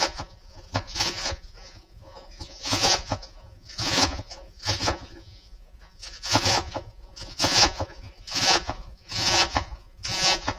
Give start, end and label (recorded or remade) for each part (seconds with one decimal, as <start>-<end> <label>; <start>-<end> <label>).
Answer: 0.0-10.6 remade